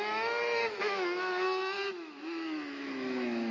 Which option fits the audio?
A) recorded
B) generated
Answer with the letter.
B